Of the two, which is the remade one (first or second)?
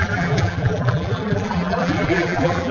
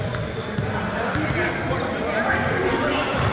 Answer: first